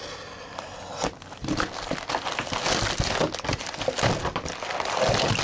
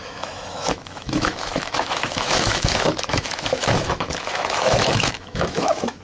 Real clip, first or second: first